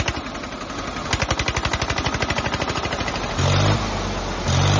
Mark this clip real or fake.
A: real